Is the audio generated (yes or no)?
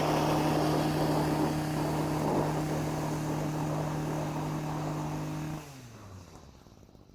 no